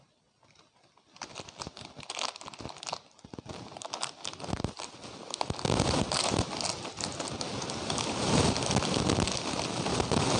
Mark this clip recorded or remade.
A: recorded